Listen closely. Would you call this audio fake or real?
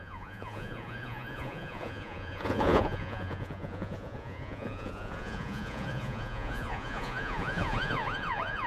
fake